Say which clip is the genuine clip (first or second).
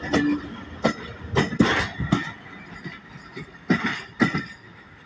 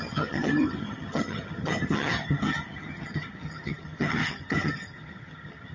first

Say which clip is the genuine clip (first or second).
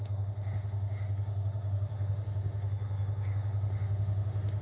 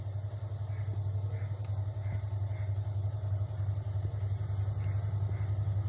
second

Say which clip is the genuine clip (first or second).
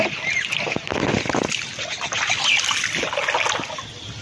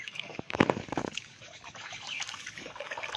first